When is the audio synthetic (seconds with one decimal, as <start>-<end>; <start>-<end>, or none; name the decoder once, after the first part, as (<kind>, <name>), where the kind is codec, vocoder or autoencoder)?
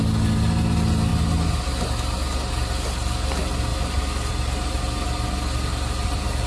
none